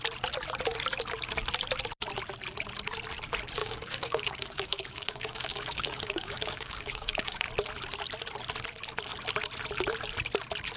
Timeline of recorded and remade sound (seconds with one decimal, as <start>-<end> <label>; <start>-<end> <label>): 0.0-3.6 recorded; 3.6-7.5 remade; 7.5-10.8 recorded